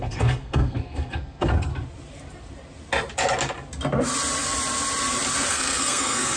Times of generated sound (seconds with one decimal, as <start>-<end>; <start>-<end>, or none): 0.0-1.7; 5.5-6.4